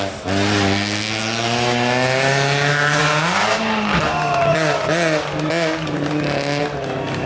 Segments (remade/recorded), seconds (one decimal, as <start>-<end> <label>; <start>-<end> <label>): 0.0-7.3 recorded